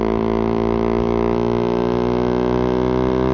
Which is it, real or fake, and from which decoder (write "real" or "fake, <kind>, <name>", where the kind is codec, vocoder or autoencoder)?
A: real